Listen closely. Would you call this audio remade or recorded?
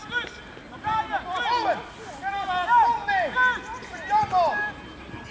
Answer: recorded